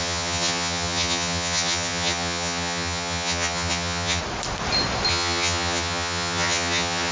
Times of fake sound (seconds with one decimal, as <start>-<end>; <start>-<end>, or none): 0.0-4.2; 5.1-7.1